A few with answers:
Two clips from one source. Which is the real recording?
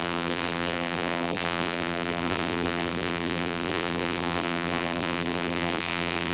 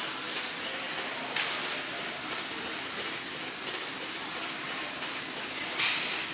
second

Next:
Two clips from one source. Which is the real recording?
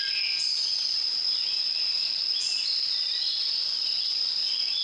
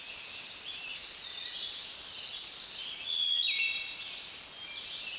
second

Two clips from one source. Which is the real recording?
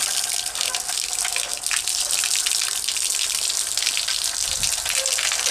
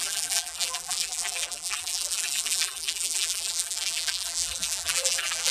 first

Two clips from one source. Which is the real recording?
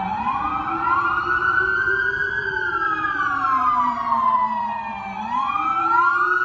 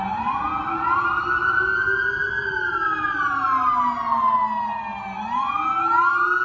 second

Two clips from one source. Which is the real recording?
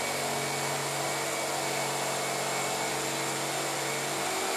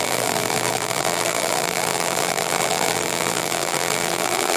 first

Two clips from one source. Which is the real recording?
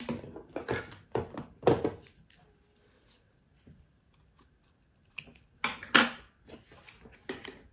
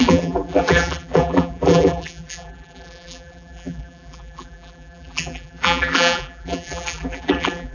first